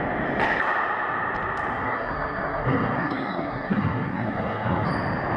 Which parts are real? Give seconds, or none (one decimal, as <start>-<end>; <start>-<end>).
0.0-1.7; 4.9-5.4